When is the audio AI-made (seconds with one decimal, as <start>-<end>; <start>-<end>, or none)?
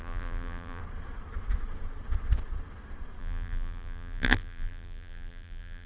0.0-0.8; 3.2-5.9